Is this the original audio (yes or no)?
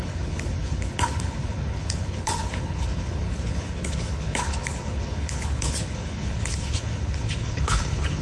no